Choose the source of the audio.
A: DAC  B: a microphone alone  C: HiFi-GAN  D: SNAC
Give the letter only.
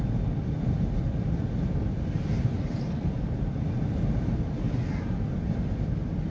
B